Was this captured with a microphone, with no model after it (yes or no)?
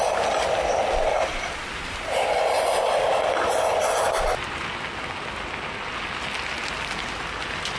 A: yes